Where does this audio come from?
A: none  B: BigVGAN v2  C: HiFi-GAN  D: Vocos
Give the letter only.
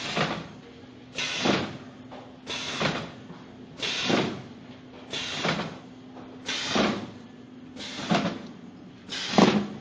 A